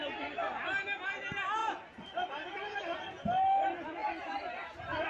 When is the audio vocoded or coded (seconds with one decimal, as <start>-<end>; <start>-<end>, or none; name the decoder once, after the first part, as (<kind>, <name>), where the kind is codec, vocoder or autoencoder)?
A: none